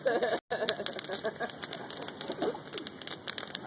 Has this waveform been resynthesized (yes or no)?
no